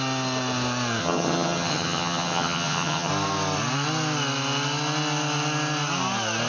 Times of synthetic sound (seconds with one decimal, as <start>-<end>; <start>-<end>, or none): 1.0-3.1